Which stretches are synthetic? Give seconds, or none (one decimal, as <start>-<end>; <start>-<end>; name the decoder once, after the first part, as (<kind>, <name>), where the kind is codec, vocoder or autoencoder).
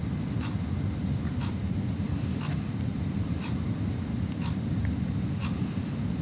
2.9-4.8 (vocoder, BigVGAN v2)